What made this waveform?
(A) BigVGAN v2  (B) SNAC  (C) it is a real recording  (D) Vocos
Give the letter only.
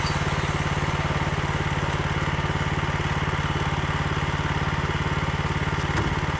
C